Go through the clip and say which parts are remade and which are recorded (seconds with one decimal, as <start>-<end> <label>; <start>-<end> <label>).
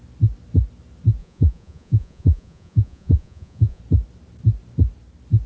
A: 0.0-1.2 recorded; 1.2-3.8 remade; 3.8-5.5 recorded